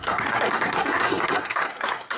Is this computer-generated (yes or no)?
yes